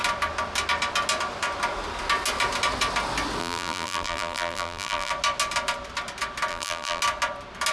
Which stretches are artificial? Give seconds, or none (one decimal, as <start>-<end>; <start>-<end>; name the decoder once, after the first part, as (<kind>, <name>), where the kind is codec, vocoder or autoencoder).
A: 3.4-5.1 (vocoder, BigVGAN v2); 6.5-7.0